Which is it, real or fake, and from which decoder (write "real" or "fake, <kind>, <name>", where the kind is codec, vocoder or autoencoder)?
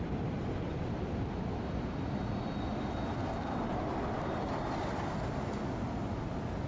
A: fake, vocoder, BigVGAN v2